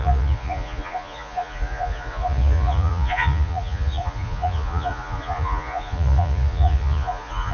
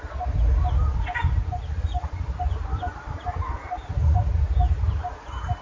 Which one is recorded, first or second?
second